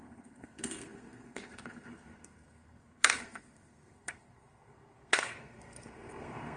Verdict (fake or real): fake